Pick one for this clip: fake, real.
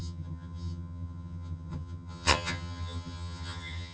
fake